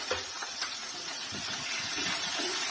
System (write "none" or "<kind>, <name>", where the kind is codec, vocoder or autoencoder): vocoder, Vocos